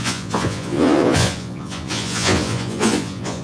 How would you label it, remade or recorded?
remade